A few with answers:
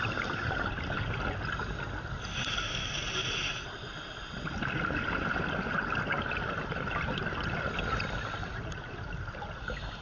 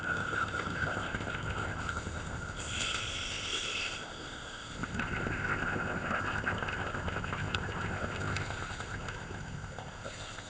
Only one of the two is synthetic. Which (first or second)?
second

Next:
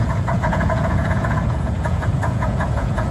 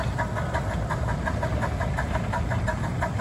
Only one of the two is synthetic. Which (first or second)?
first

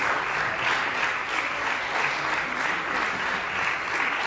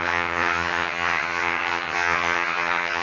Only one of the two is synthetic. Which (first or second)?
second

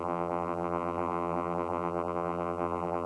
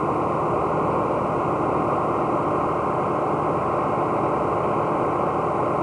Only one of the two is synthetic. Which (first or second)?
first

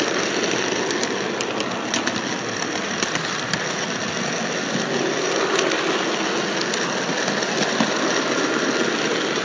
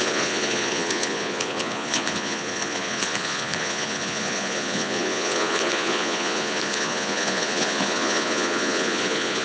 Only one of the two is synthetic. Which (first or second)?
second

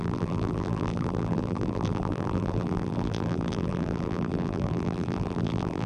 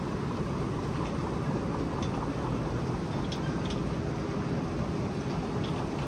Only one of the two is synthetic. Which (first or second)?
first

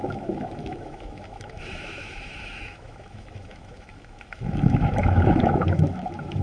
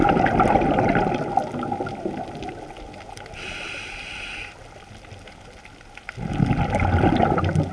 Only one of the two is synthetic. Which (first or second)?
first